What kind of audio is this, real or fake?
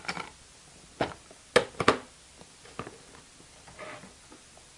real